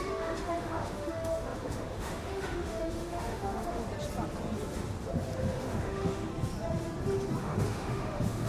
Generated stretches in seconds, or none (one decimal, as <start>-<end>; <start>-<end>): 0.0-3.8; 5.4-6.3; 7.4-8.5